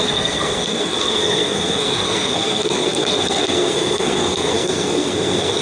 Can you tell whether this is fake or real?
fake